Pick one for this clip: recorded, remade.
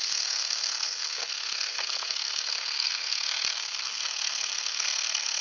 remade